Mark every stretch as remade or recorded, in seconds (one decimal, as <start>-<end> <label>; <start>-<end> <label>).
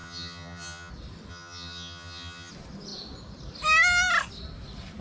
0.0-0.9 remade; 0.9-1.3 recorded; 1.3-2.5 remade; 2.5-5.0 recorded